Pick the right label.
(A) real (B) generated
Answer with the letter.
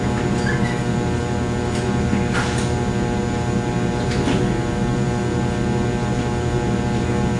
A